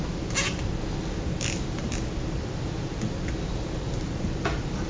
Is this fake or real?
real